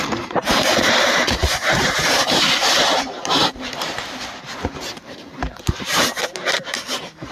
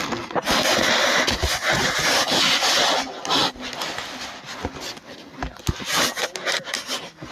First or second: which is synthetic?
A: first